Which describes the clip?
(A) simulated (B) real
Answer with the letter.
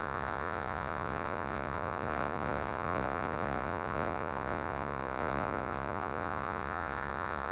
A